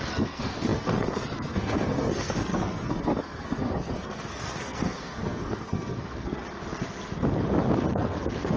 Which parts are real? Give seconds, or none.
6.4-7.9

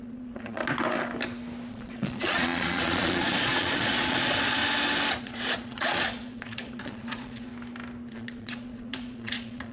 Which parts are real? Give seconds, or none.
0.6-1.7; 4.6-5.2; 7.5-8.1

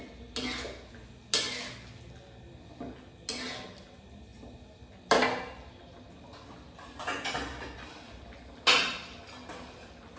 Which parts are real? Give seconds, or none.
0.0-10.2

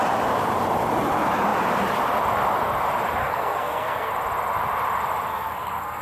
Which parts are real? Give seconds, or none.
0.0-3.2; 4.1-5.3

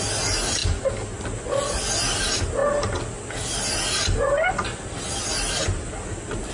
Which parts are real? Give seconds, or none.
0.0-6.5

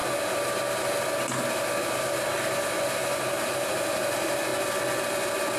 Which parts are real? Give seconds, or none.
0.0-5.6

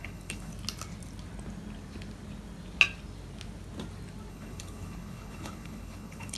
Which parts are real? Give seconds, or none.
0.5-4.3